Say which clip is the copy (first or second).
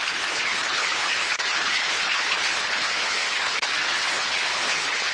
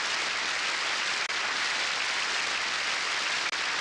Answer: first